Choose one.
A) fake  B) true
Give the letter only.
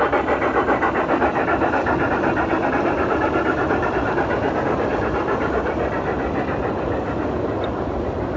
A